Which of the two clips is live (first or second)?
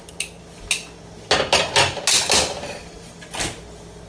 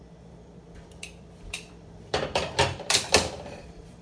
first